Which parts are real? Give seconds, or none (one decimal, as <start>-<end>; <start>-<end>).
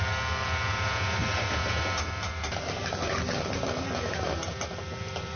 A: 0.0-5.4